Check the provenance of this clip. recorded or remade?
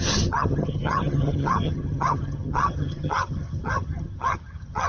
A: remade